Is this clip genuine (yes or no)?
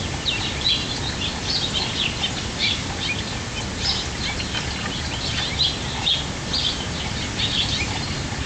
yes